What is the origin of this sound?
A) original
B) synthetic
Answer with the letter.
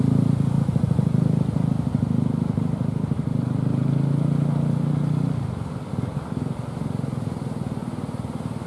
A